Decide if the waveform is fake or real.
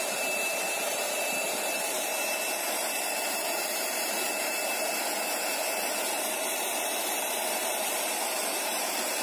fake